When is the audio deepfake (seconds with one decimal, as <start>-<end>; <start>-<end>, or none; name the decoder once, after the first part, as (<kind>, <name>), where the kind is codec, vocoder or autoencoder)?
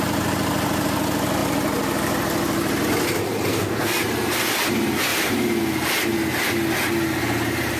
3.5-4.0 (codec, SNAC)